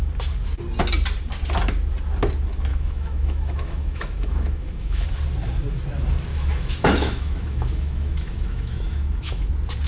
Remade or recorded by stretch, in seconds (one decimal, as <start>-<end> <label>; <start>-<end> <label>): 0.0-2.7 recorded; 2.7-5.1 remade; 5.1-6.3 recorded; 6.3-9.5 remade; 9.5-9.9 recorded